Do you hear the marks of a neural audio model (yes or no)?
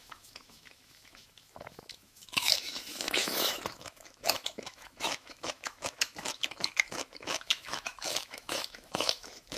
yes